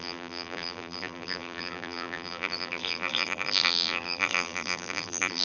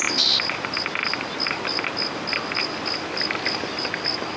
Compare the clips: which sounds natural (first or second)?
second